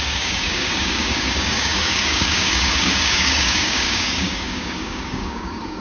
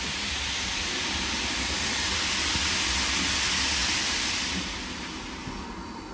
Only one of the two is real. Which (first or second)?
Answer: second